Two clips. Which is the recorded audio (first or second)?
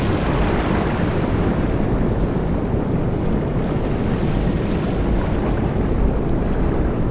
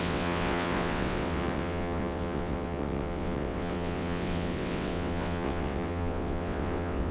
first